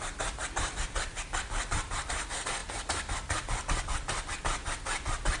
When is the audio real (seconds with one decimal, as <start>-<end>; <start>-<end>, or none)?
0.0-5.4